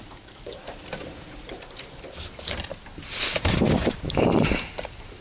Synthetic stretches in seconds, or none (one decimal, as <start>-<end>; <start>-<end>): 0.0-0.6; 3.7-5.2